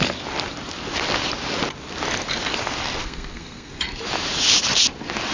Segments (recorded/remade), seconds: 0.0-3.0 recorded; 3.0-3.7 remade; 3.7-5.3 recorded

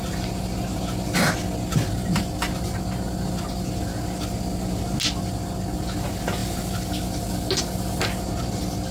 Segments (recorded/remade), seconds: 0.0-8.9 recorded

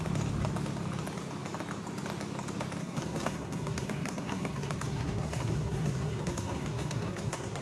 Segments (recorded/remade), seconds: 0.0-2.8 recorded; 2.8-7.6 remade

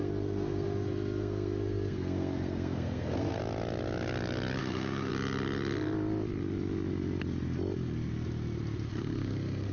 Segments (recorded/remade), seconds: 0.0-3.4 remade; 3.4-4.6 recorded; 4.6-5.1 remade; 5.1-8.9 recorded; 8.9-9.7 remade

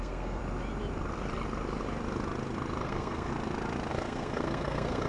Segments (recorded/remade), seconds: 0.0-0.4 remade; 0.4-2.8 recorded; 2.8-3.3 remade; 3.3-3.9 recorded; 3.9-5.1 remade

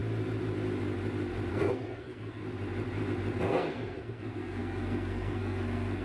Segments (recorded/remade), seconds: 0.0-1.5 recorded; 1.5-2.4 remade; 2.4-3.4 recorded; 3.4-6.0 remade